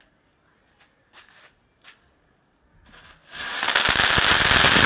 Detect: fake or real real